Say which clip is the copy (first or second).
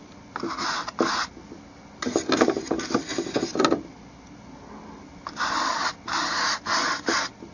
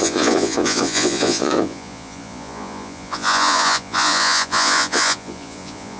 second